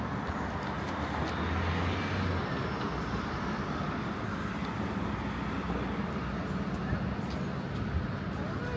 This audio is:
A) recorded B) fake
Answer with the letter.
A